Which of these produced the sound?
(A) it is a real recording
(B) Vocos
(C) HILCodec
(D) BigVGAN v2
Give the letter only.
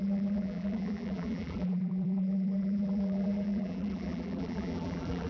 D